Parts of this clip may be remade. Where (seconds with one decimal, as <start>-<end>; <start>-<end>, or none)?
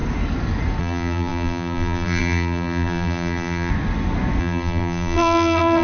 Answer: 0.8-3.7; 4.4-5.8